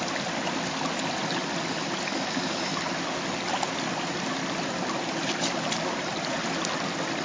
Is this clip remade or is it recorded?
recorded